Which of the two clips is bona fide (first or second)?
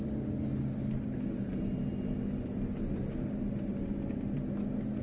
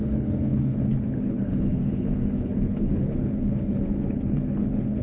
first